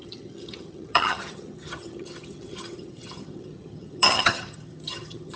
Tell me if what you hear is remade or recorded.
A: remade